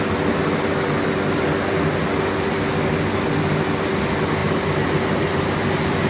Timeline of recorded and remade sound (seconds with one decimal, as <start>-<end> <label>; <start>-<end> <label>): 0.0-4.4 recorded; 4.4-6.1 remade